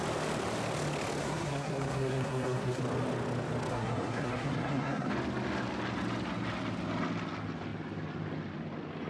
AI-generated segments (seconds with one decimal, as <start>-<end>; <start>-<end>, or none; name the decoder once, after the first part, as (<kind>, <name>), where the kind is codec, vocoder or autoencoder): 1.2-2.8 (codec, SNAC); 3.7-5.1